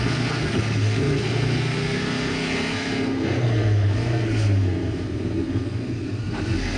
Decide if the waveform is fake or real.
fake